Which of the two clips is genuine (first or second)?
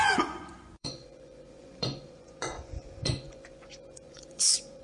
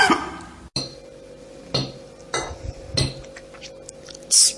second